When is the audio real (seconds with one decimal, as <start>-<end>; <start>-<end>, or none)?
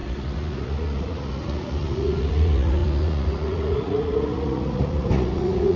none